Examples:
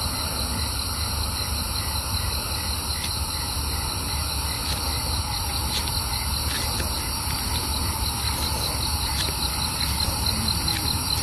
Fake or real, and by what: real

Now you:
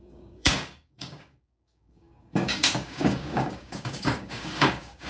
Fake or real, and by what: fake, codec, DAC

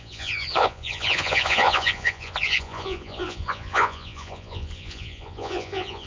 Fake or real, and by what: fake, vocoder, Vocos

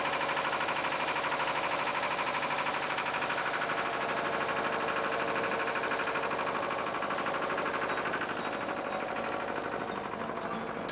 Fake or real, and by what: real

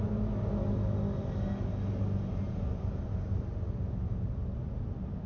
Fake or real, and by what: real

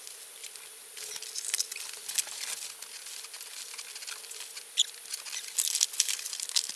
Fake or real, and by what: real